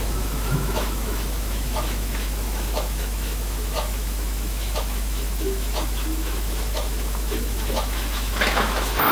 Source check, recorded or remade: remade